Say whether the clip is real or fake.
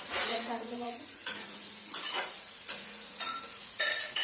fake